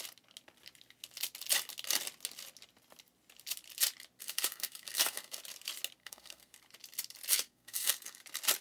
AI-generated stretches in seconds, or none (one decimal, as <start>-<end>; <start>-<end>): 4.2-5.4; 6.0-6.6; 7.3-8.2